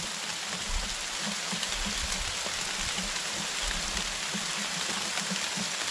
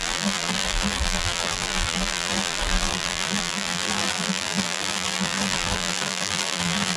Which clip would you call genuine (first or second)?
first